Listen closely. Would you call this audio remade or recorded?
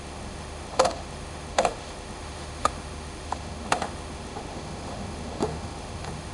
remade